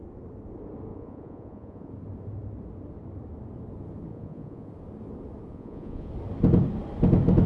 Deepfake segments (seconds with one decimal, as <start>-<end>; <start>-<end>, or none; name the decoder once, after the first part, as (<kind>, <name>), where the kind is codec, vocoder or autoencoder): 0.9-1.9 (vocoder, Vocos); 4.1-4.7; 5.5-6.1